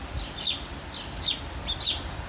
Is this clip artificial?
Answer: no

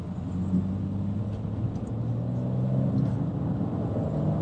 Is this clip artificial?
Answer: no